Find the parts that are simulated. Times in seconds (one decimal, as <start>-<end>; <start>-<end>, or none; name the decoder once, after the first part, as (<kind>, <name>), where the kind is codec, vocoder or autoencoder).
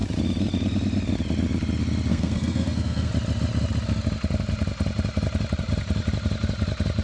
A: 2.1-3.1 (codec, SNAC)